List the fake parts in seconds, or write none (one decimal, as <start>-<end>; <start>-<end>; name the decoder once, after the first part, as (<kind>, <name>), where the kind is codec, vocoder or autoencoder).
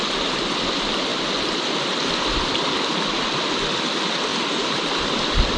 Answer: 4.3-5.0 (vocoder, BigVGAN v2)